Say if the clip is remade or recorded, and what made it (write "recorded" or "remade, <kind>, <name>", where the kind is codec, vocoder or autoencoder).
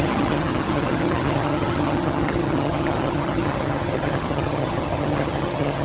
remade, vocoder, HiFi-GAN